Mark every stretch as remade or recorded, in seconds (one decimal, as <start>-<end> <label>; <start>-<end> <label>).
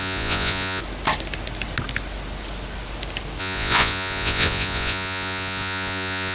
0.0-0.8 remade; 0.8-3.4 recorded; 3.4-6.3 remade